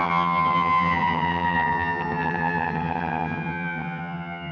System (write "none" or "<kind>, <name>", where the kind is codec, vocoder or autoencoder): vocoder, HiFi-GAN